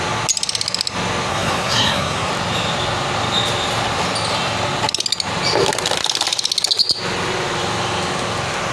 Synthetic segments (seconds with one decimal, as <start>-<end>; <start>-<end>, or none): 1.3-2.3